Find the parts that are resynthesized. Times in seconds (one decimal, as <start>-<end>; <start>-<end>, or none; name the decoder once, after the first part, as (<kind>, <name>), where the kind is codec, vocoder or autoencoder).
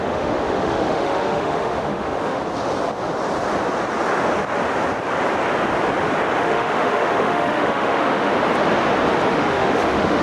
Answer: 0.0-2.4 (autoencoder, DAC-VAE); 6.4-8.3; 9.3-10.2